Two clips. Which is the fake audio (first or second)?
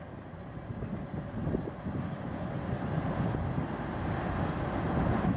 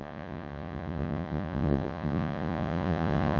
second